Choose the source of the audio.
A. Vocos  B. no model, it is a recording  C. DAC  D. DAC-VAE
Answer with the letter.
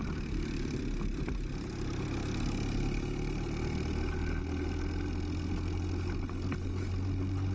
B